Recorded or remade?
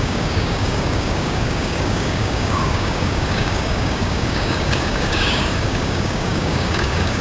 remade